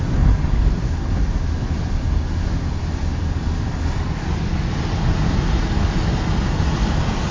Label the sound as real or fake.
real